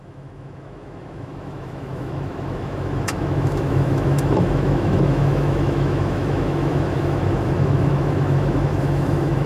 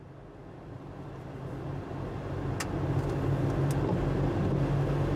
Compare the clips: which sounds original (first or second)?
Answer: second